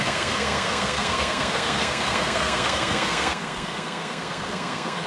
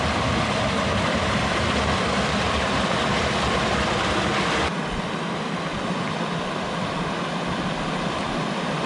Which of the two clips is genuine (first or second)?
second